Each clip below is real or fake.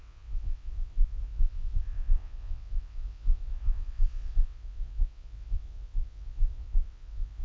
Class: fake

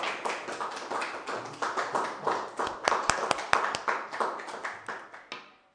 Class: real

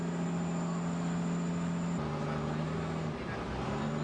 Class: real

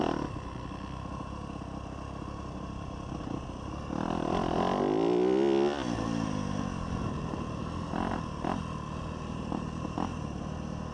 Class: real